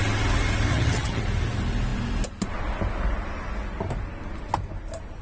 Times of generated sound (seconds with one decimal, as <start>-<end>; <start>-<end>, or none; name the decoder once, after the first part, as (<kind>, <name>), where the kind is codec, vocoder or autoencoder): 0.7-1.2 (vocoder, HiFi-GAN)